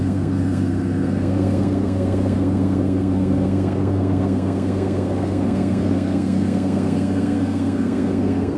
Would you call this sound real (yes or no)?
no